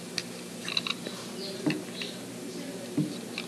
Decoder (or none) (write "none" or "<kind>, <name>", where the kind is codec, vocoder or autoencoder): none